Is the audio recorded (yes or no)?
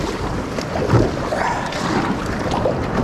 no